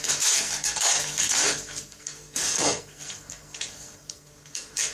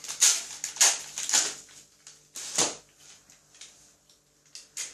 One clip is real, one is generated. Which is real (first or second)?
second